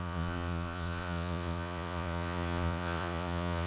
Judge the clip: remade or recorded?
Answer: remade